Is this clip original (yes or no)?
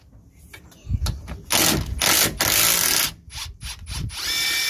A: yes